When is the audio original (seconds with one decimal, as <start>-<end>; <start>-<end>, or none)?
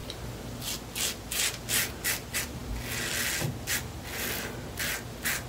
0.0-5.5